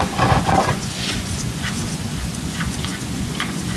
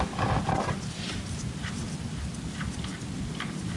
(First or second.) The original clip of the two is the second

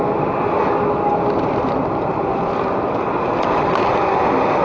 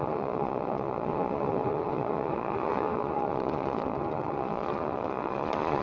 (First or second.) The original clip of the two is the first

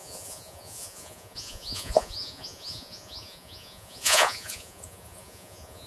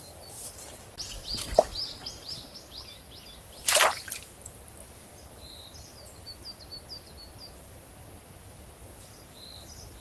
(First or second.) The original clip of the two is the second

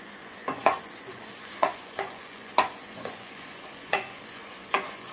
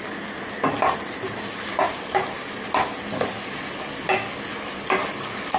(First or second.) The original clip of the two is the second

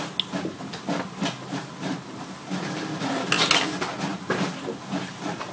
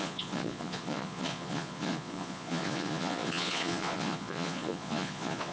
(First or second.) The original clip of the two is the first